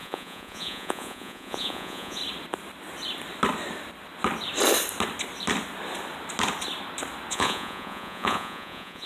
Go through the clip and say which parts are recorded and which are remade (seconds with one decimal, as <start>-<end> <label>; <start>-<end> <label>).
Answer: 0.0-2.2 remade; 2.2-7.3 recorded; 7.3-9.1 remade